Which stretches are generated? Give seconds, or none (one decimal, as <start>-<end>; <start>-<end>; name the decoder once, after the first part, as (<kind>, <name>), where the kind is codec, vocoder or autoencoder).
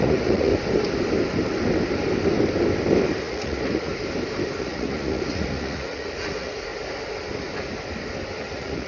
0.0-0.5 (vocoder, Vocos); 3.2-3.9; 4.6-6.7; 8.4-8.9